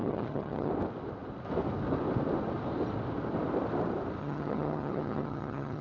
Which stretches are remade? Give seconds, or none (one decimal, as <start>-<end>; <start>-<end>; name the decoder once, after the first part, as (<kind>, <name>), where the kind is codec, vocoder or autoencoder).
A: 0.0-0.7 (vocoder, HiFi-GAN); 4.2-5.8